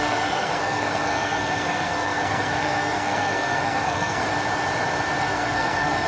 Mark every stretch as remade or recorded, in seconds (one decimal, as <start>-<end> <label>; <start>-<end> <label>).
0.0-4.3 remade; 4.3-5.2 recorded; 5.2-6.1 remade